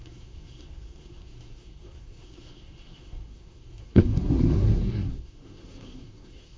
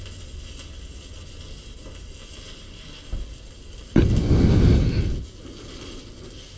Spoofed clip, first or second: first